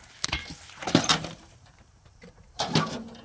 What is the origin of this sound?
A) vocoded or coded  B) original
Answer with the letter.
A